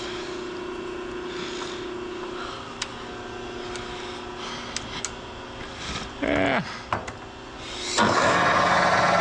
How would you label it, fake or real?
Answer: real